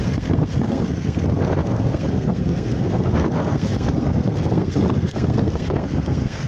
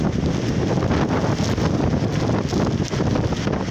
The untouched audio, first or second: second